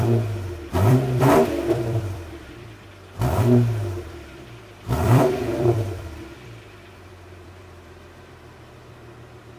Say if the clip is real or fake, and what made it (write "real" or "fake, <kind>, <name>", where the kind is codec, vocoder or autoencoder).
fake, vocoder, BigVGAN v2